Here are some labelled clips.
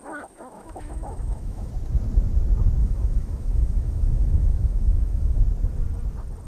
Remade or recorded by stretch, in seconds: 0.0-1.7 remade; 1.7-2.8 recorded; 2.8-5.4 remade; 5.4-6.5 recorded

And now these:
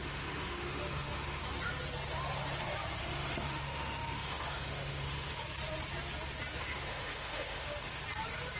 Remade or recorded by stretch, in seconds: 0.0-1.4 remade; 1.4-3.0 recorded; 3.0-5.4 remade; 5.4-6.6 recorded; 6.6-8.0 remade; 8.0-8.6 recorded

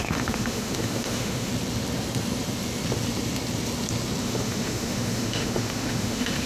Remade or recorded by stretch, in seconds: 0.0-1.5 remade; 1.5-4.2 recorded; 4.2-6.5 remade

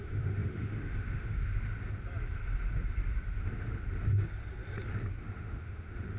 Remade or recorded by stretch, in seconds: 0.0-1.5 remade; 1.5-5.2 recorded; 5.2-6.2 remade